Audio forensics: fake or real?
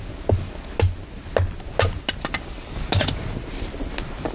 real